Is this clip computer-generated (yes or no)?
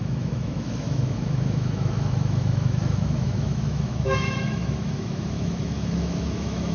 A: yes